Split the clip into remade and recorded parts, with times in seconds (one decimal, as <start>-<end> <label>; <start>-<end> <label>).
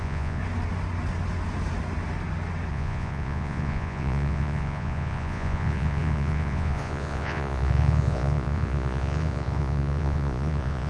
0.0-0.4 remade; 0.4-2.7 recorded; 2.7-10.9 remade